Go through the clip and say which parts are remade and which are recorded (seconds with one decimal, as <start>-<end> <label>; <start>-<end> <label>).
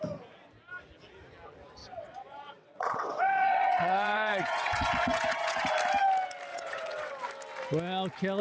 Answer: 0.0-1.8 recorded; 1.8-5.7 remade; 5.7-6.5 recorded; 6.5-7.1 remade; 7.1-8.4 recorded